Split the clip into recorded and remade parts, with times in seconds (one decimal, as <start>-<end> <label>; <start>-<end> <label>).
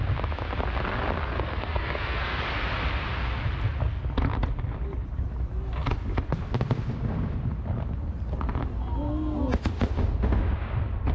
0.0-1.2 recorded; 1.2-2.4 remade; 2.4-11.1 recorded